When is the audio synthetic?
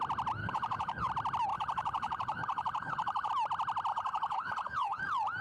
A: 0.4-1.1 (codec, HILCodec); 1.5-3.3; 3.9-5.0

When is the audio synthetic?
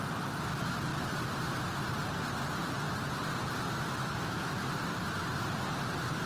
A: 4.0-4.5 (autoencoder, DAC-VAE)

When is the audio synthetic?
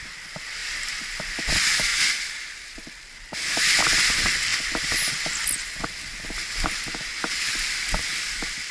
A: none